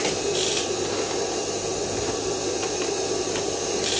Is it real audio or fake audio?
fake